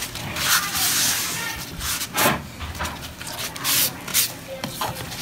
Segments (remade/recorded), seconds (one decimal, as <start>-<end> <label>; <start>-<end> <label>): 0.0-0.7 recorded; 0.7-2.4 remade; 2.4-4.1 recorded; 4.1-5.2 remade